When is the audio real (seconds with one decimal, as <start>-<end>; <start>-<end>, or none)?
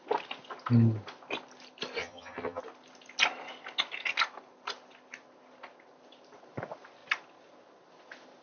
0.0-2.0; 2.6-8.4